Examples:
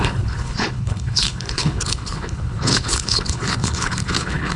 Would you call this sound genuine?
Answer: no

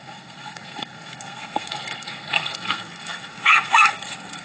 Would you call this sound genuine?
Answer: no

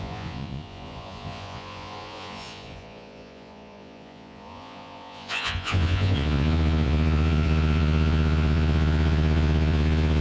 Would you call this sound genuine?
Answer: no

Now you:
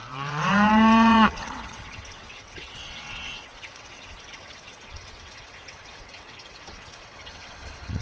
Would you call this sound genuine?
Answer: no